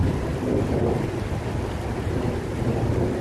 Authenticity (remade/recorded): recorded